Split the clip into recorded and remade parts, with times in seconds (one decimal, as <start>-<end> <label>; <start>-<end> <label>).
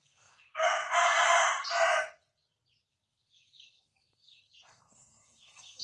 0.0-0.8 remade; 0.8-2.9 recorded; 2.9-5.8 remade